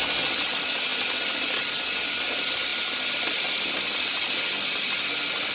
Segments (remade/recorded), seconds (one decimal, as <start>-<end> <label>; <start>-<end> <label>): 0.0-5.5 recorded